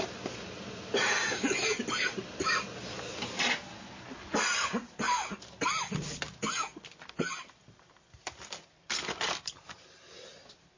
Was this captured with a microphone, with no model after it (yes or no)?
yes